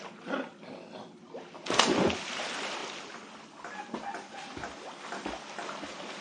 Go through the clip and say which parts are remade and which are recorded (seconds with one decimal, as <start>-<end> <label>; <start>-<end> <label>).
0.0-6.2 recorded